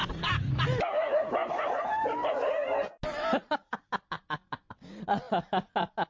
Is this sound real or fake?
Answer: real